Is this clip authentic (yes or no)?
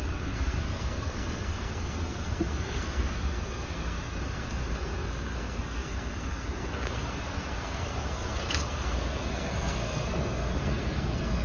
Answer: no